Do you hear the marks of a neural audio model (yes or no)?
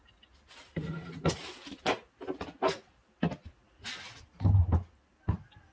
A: no